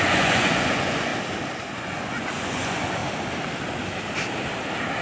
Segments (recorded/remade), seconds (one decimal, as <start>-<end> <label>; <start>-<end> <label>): 0.0-1.1 remade; 1.1-1.7 recorded; 1.7-3.0 remade; 3.0-5.0 recorded

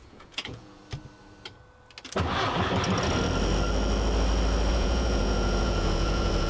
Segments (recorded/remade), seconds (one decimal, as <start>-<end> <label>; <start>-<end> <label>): 0.0-0.8 remade; 0.8-4.7 recorded; 4.7-6.5 remade

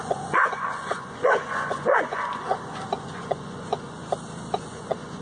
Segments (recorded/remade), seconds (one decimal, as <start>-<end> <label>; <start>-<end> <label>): 0.0-4.0 remade; 4.0-4.7 recorded; 4.7-5.2 remade

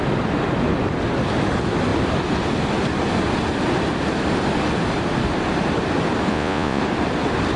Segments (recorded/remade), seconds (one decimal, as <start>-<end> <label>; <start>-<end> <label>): 0.0-6.3 recorded; 6.3-6.8 remade; 6.8-7.6 recorded

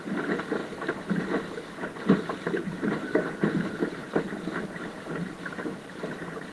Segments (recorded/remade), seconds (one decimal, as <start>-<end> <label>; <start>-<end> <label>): 0.0-6.5 recorded